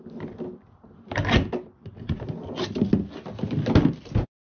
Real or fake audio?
real